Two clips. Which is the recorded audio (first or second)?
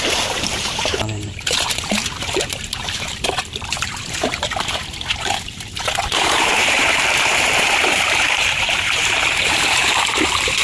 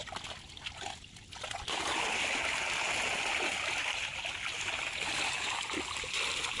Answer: second